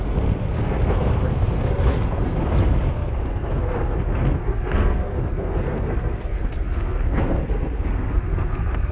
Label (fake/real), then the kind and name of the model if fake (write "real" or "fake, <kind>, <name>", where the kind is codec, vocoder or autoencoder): fake, codec, SNAC